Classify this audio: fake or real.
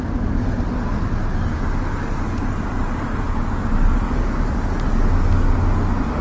real